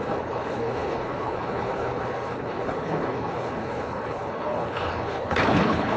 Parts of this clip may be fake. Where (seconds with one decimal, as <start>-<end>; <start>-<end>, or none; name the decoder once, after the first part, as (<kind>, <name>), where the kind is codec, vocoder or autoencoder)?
0.0-6.0 (codec, HILCodec)